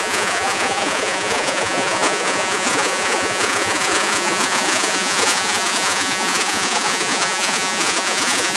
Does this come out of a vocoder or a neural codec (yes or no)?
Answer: yes